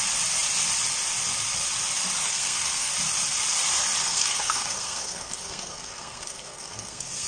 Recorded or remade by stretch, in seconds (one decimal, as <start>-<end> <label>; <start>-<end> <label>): 0.0-2.2 recorded; 2.2-2.9 remade; 2.9-4.0 recorded; 4.0-7.3 remade